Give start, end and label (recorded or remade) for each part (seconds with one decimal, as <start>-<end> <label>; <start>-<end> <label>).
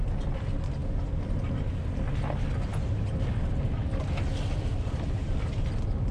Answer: 0.0-6.1 recorded